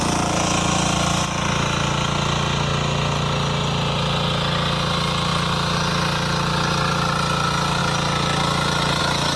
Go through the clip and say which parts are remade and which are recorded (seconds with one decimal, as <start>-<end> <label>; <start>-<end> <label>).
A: 0.0-9.4 recorded